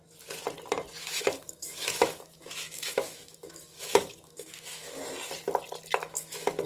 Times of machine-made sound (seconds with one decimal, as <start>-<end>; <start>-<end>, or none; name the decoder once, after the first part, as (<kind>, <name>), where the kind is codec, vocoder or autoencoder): 1.0-5.0 (autoencoder, DAC-VAE); 6.0-6.7